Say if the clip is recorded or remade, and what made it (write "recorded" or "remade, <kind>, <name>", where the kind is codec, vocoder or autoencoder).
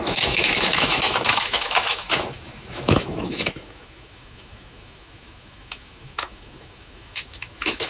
remade, autoencoder, DAC-VAE